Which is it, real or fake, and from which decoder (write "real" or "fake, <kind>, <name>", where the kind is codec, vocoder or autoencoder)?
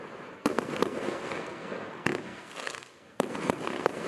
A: fake, codec, SNAC